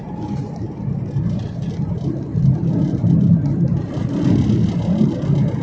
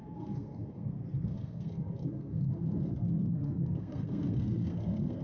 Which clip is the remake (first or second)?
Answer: second